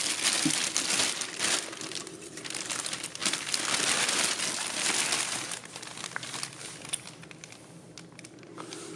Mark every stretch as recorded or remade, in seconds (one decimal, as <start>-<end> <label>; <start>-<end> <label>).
0.0-9.0 recorded